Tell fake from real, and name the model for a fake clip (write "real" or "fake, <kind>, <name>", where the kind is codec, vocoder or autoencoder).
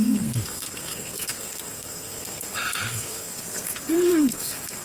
fake, codec, SNAC